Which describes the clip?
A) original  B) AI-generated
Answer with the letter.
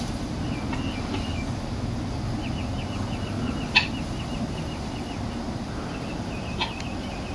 A